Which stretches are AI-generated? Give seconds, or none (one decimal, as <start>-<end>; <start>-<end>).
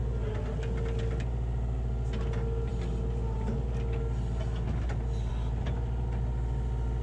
none